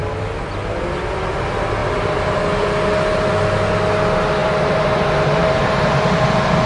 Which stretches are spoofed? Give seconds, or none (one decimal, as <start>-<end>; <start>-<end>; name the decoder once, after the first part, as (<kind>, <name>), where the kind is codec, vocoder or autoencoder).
1.8-2.4 (vocoder, BigVGAN v2); 4.4-6.7